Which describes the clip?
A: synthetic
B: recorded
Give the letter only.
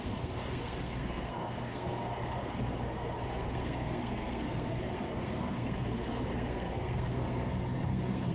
A